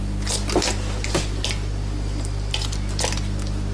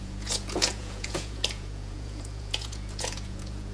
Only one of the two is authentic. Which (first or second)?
first